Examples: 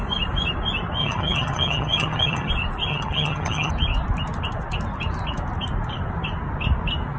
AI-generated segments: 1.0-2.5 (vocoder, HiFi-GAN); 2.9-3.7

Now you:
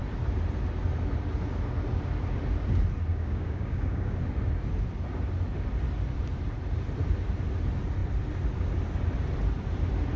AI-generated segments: 3.1-4.2 (codec, DAC)

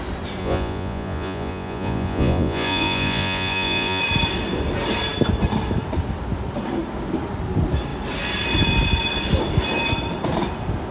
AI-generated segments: 0.4-4.0 (vocoder, Vocos)

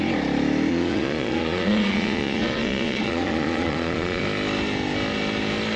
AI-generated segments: 0.7-4.2 (vocoder, Vocos)

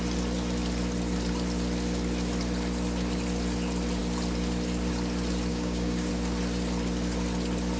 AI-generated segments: 5.5-6.1 (codec, DAC)

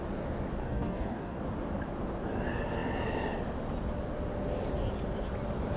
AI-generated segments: 0.6-1.4 (codec, DAC)

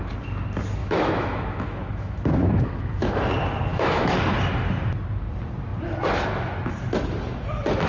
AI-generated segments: 0.8-3.3 (autoencoder, DAC-VAE); 3.7-4.2

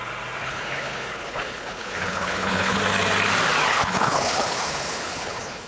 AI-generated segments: 0.4-2.8 (codec, HILCodec); 3.7-5.7